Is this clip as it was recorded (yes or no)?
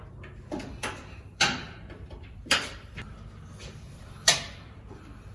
no